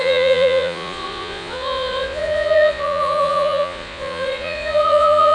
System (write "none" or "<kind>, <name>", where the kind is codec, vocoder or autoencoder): vocoder, Vocos